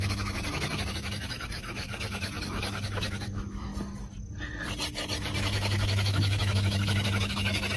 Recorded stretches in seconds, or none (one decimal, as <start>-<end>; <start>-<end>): 3.7-5.4